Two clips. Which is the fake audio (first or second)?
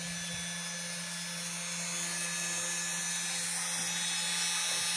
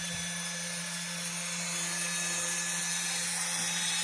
second